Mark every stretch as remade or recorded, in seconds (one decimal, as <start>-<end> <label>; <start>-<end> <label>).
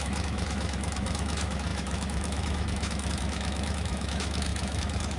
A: 0.0-5.2 remade